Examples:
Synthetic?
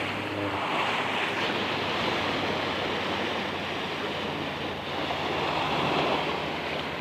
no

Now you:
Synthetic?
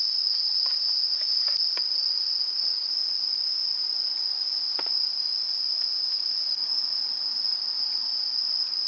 no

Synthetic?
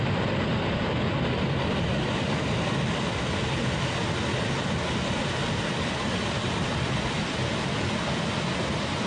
no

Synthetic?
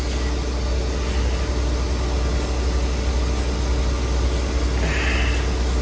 no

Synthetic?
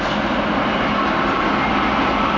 no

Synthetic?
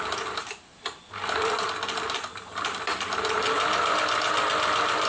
no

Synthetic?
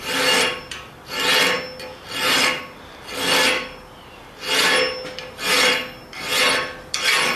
yes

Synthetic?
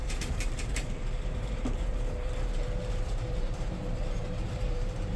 yes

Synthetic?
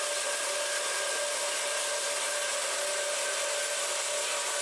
no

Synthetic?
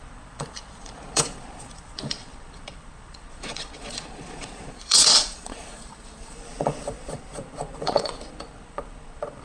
yes